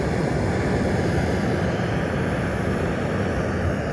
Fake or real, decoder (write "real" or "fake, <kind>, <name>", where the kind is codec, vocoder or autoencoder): real